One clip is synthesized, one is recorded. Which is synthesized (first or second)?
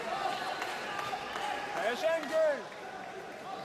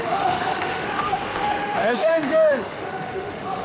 second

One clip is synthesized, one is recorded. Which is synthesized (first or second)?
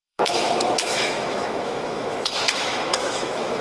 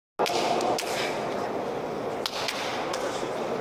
first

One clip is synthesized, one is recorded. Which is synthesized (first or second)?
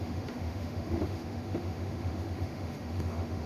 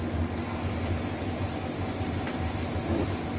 first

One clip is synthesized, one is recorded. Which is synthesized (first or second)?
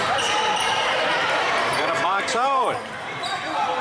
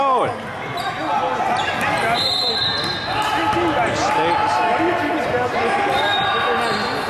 first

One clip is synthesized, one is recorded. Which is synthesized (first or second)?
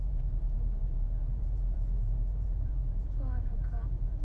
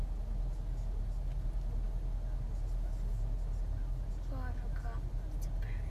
first